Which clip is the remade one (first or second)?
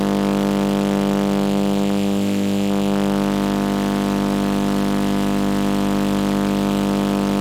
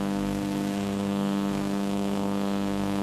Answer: second